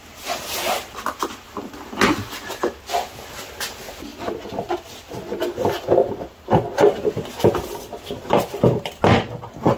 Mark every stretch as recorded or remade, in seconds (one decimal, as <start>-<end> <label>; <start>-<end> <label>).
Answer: 0.0-9.8 recorded